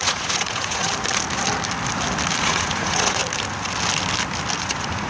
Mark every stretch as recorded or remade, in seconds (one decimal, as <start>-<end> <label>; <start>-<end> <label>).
0.0-0.9 remade; 0.9-2.4 recorded; 2.4-3.2 remade; 3.2-4.6 recorded; 4.6-5.1 remade